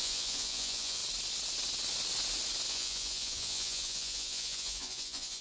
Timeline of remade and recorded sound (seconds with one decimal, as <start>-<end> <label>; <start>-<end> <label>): 0.0-1.0 remade; 1.0-2.7 recorded; 2.7-5.4 remade